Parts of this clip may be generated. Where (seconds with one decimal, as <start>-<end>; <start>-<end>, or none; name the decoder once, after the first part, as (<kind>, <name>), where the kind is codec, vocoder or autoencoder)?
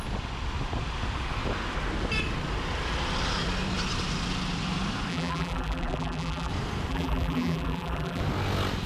5.1-6.5 (vocoder, BigVGAN v2); 6.9-8.2